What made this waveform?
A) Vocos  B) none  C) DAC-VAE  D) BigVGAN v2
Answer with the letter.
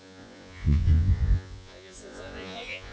A